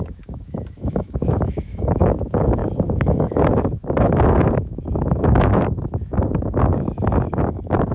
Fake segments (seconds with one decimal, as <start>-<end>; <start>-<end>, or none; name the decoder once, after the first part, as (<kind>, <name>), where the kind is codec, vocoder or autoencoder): 0.0-7.9 (autoencoder, DAC-VAE)